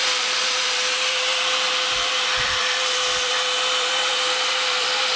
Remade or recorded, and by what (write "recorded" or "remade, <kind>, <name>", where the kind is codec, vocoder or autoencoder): remade, vocoder, BigVGAN v2